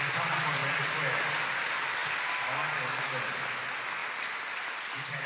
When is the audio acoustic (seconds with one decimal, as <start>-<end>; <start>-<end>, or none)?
0.0-4.0